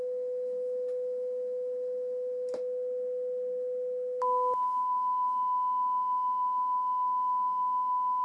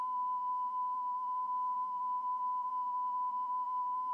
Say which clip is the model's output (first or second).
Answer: second